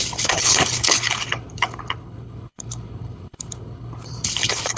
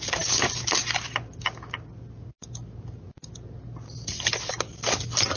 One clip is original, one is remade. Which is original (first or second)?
second